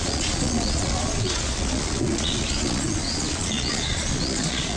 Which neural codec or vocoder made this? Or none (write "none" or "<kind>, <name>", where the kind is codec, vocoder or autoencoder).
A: vocoder, Vocos